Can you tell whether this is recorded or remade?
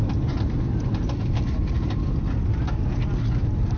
recorded